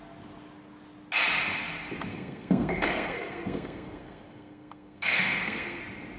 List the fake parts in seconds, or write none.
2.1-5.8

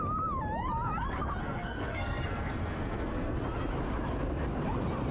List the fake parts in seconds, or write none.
1.4-3.4

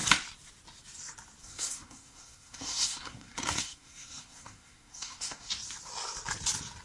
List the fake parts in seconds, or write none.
1.4-5.5